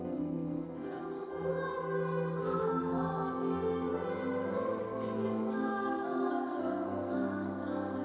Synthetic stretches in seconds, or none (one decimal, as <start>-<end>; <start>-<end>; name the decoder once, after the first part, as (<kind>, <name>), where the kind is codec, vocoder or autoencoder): 0.0-1.5 (codec, SNAC); 2.4-3.9; 4.8-8.0